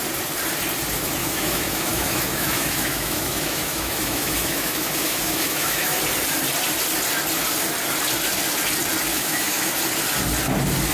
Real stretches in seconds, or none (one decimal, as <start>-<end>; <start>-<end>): 0.0-1.2; 6.0-9.1; 9.7-10.9